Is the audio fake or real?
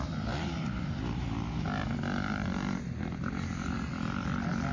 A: real